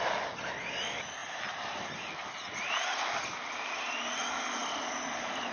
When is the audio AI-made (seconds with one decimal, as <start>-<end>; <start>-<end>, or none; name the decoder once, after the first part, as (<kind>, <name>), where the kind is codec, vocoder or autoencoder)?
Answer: none